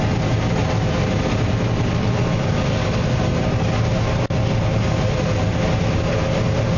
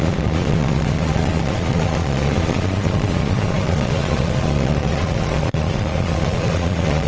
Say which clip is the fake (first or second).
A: second